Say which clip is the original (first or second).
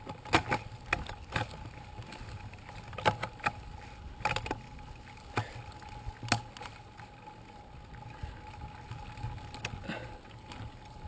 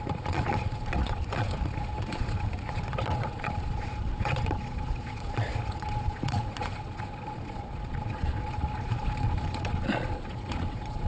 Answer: first